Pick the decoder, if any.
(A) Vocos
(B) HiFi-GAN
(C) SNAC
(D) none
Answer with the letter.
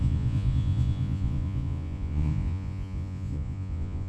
A